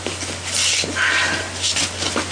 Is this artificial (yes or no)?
no